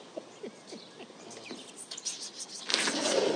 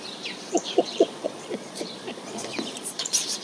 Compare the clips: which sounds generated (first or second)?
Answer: second